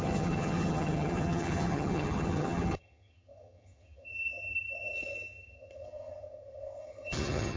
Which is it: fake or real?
fake